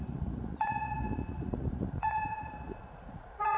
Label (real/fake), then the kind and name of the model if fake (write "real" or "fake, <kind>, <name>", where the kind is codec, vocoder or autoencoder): fake, vocoder, Vocos